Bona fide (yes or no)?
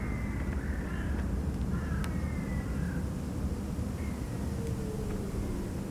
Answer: yes